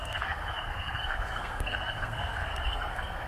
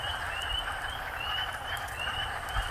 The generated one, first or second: first